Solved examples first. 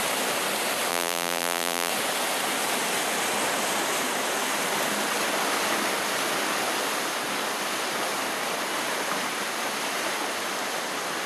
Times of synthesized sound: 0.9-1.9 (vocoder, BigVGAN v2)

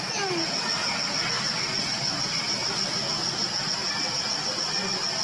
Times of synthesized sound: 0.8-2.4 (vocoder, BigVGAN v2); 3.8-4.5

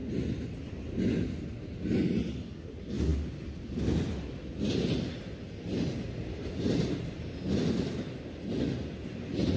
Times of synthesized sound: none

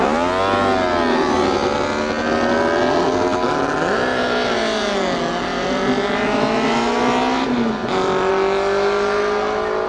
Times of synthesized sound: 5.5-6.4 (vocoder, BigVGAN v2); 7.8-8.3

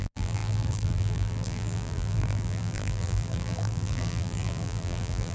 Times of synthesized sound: 0.0-5.3 (vocoder, BigVGAN v2)